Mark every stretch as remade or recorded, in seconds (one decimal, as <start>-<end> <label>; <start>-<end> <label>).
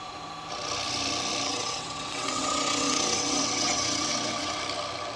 0.0-1.5 recorded; 1.5-4.6 remade; 4.6-5.2 recorded